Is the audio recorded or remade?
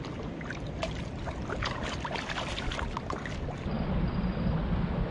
recorded